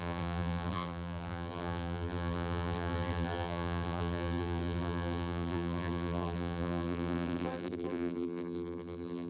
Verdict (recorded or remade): remade